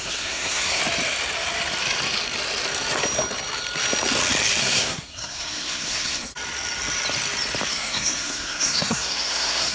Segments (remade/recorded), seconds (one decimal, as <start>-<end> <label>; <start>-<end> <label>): 0.0-0.8 remade; 0.8-4.6 recorded; 4.6-6.3 remade; 6.3-7.7 recorded; 7.7-9.7 remade